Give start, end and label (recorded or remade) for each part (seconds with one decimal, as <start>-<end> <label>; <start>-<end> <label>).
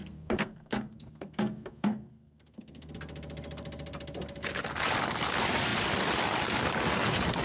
0.0-2.9 remade; 2.9-7.4 recorded